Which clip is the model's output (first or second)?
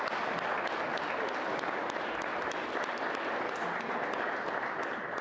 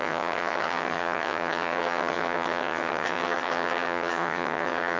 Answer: second